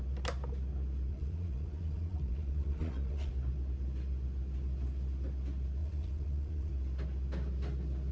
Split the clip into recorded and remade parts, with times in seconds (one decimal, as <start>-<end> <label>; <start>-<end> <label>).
0.0-1.1 recorded; 1.1-3.3 remade; 3.3-5.8 recorded; 5.8-6.7 remade; 6.7-8.1 recorded

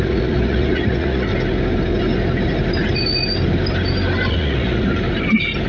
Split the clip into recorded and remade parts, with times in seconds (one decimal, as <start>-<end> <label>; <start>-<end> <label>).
0.0-1.3 remade; 1.3-4.3 recorded; 4.3-4.9 remade; 4.9-5.7 recorded

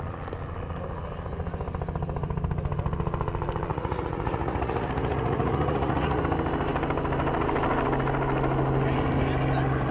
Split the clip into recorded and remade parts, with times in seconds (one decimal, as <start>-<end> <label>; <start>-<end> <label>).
0.0-3.7 recorded; 3.7-6.2 remade; 6.2-9.9 recorded

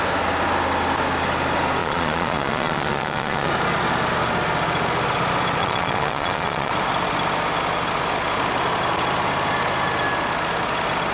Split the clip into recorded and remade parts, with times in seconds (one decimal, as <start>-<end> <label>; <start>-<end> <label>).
0.0-1.8 recorded; 1.8-3.5 remade; 3.5-5.6 recorded; 5.6-6.7 remade; 6.7-11.1 recorded

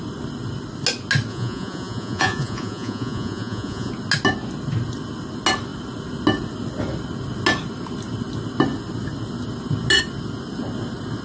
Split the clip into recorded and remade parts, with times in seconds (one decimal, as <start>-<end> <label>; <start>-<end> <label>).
0.0-1.3 recorded; 1.3-3.9 remade; 3.9-11.2 recorded